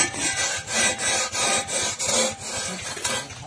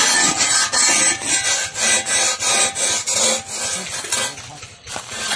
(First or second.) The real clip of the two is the second